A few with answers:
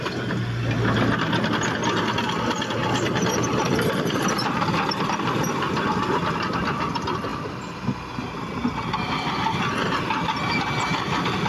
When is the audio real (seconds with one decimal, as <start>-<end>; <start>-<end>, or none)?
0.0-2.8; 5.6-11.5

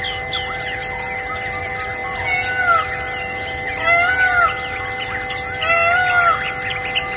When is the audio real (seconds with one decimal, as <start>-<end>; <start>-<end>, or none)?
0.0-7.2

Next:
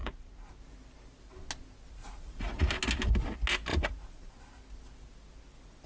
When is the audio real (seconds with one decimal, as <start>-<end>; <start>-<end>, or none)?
0.5-2.0; 2.7-3.7; 4.3-5.9

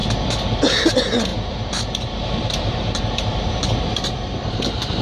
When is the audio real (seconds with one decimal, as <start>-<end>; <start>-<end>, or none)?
0.0-0.8

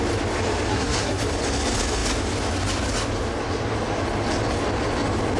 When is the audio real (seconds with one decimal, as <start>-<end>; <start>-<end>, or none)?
0.0-0.7; 1.2-5.4

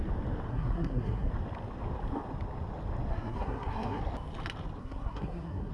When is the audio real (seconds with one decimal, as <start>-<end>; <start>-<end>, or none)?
0.0-0.5; 1.3-3.1; 4.0-4.8